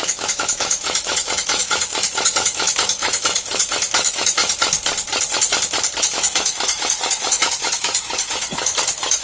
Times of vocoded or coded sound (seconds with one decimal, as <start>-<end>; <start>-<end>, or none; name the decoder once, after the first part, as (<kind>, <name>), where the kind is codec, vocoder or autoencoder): 0.0-4.4 (autoencoder, DAC-VAE); 6.0-9.2